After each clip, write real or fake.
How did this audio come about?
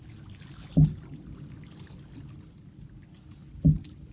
real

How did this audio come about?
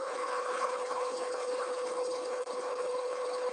fake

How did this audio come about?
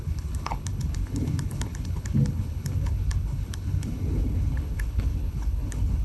fake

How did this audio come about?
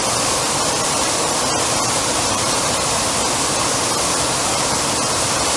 real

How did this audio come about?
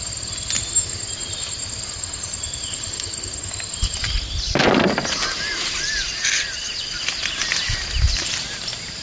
real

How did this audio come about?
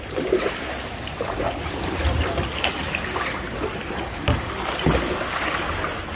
real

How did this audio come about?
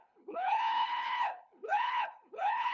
fake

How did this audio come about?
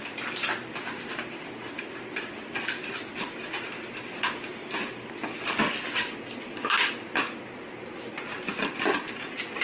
real